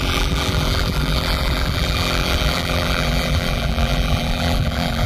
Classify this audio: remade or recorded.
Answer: remade